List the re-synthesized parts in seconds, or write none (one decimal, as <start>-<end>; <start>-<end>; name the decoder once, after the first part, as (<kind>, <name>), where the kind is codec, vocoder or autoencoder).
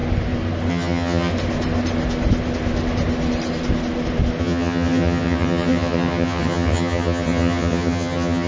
0.7-1.3 (vocoder, HiFi-GAN); 4.4-8.5